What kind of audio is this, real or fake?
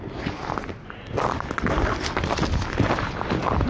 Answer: real